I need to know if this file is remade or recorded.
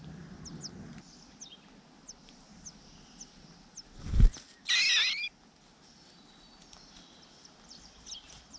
recorded